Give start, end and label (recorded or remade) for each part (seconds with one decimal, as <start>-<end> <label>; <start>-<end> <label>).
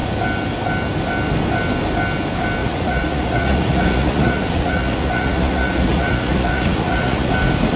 0.0-2.6 recorded; 2.6-7.3 remade; 7.3-7.8 recorded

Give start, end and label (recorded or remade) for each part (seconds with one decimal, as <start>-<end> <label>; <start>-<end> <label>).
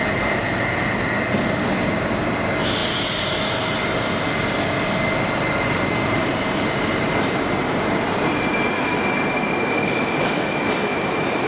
0.0-11.5 recorded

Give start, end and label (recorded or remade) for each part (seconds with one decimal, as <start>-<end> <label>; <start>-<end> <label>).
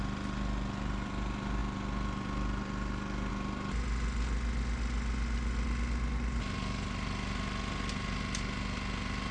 0.0-9.3 recorded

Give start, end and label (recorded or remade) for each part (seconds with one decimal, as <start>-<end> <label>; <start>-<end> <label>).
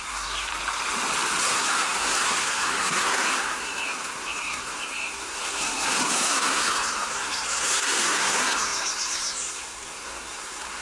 0.0-0.5 remade; 0.5-1.4 recorded; 1.4-10.8 remade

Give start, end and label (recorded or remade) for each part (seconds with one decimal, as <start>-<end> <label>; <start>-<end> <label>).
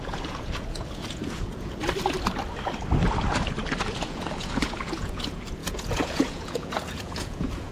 0.0-1.8 remade; 1.8-3.8 recorded; 3.8-7.7 remade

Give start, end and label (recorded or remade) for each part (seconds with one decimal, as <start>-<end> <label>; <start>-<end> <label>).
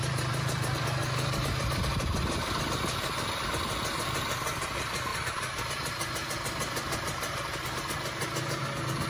0.0-9.1 recorded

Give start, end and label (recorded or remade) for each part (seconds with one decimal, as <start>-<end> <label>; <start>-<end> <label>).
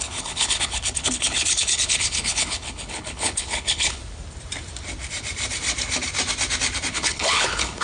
0.0-4.0 remade; 4.0-6.9 recorded; 6.9-7.8 remade